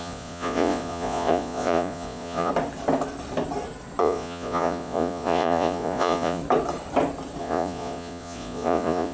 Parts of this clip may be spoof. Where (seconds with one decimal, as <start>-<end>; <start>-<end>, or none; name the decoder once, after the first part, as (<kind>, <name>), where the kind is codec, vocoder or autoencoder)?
0.0-2.5 (vocoder, Vocos); 4.0-6.4; 7.4-9.1